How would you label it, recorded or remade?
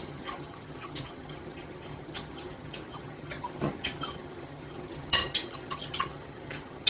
remade